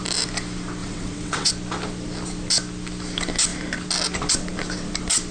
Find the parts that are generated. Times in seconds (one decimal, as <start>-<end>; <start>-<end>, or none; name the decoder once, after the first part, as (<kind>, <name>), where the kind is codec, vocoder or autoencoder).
0.8-1.5 (vocoder, WaveNeXt)